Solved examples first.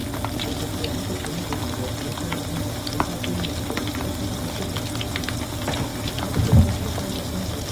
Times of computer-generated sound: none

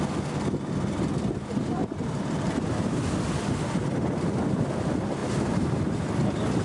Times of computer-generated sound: 1.8-3.0; 5.2-6.1

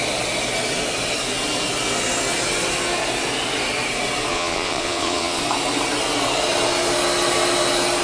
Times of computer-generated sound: 4.3-5.4